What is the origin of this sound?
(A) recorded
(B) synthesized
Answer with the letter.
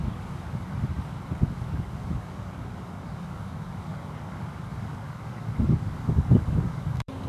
B